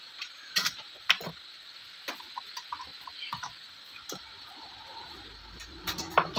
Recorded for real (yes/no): yes